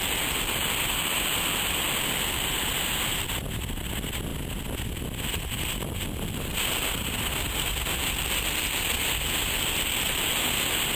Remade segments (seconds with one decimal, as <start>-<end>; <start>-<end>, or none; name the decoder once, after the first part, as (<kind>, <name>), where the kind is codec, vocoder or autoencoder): 0.0-4.3 (vocoder, BigVGAN v2); 4.8-11.0